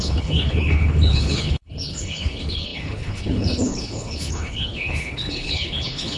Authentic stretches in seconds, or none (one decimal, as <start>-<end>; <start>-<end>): none